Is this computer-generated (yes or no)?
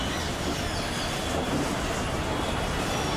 no